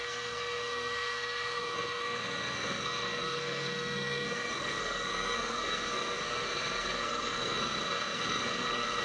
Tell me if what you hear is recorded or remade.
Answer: remade